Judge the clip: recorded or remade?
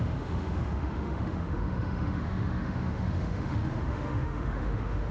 remade